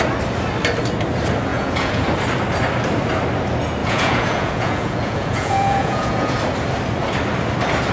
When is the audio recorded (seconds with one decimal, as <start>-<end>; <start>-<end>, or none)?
0.0-1.5; 2.0-3.8; 6.4-7.9